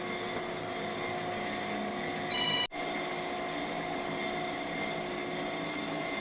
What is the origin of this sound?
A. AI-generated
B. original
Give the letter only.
B